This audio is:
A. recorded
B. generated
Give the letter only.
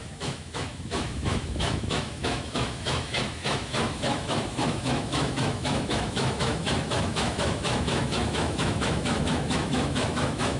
B